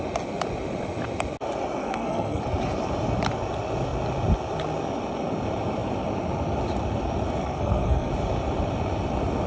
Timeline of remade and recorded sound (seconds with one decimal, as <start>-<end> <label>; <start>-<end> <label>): 0.0-1.8 recorded; 1.8-2.4 remade; 2.4-7.4 recorded; 7.4-8.1 remade; 8.1-9.5 recorded